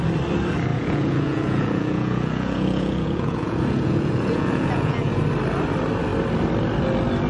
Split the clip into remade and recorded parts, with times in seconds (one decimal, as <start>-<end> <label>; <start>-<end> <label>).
0.0-0.7 recorded; 0.7-5.1 remade; 5.1-7.3 recorded